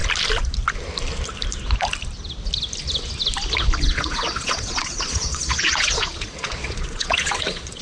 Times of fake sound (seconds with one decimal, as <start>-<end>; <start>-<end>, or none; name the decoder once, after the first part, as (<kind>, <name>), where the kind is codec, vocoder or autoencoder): 3.8-7.8 (vocoder, Vocos)